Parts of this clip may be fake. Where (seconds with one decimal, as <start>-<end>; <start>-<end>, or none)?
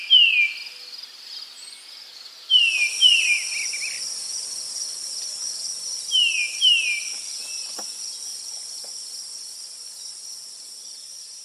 none